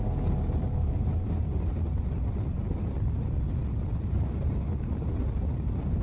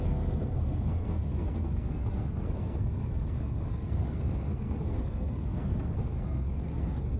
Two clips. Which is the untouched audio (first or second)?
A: first